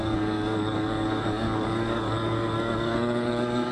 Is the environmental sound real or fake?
fake